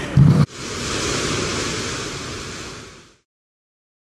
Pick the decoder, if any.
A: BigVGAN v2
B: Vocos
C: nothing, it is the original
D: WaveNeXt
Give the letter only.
C